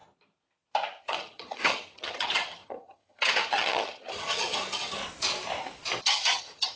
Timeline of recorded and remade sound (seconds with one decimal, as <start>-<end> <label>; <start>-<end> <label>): 0.0-1.0 recorded; 1.0-5.0 remade; 5.0-6.0 recorded; 6.0-6.8 remade